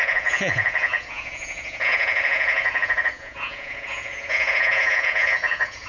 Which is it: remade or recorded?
remade